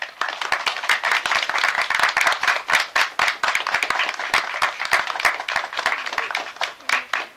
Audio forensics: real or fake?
real